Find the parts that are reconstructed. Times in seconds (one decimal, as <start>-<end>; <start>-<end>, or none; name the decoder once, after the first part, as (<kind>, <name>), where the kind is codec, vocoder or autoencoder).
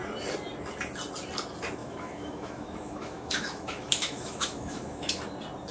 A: 1.8-5.2 (autoencoder, DAC-VAE)